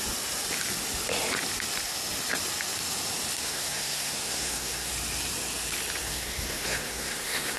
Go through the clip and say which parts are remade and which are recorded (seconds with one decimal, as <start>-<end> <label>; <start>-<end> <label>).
0.0-3.4 recorded; 3.4-4.9 remade; 4.9-6.0 recorded; 6.0-7.6 remade